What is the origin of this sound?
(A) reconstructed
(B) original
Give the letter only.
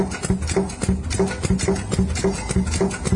B